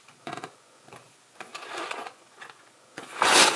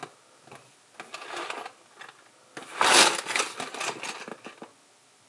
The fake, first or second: first